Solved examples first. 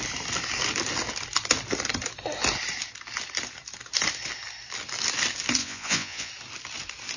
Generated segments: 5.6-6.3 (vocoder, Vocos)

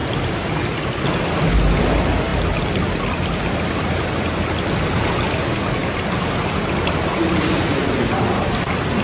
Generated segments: 0.0-0.6 (vocoder, BigVGAN v2)